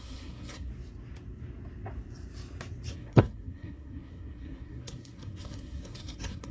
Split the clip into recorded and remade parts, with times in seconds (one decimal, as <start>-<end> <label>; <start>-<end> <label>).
0.0-0.7 remade; 0.7-2.9 recorded; 2.9-6.5 remade